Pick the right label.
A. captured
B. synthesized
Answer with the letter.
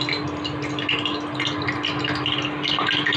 A